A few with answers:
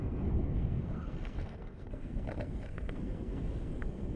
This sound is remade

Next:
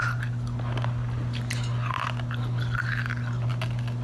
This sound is recorded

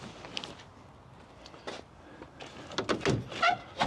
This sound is recorded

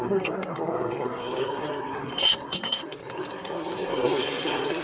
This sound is remade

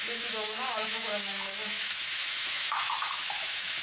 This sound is remade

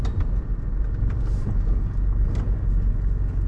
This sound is recorded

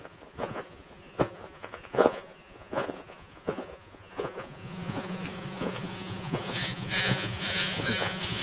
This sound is remade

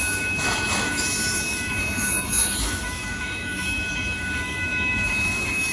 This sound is remade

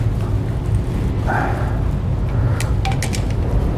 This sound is recorded